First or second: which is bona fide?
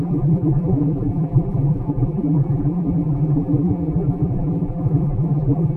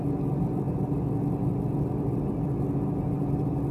second